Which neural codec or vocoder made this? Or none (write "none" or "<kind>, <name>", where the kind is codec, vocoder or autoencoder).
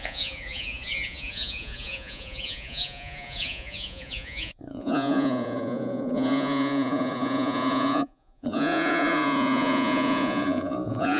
vocoder, Vocos